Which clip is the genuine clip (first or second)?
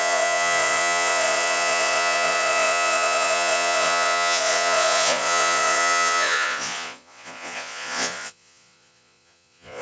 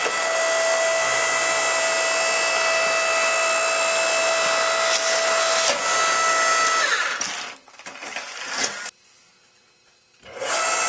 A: second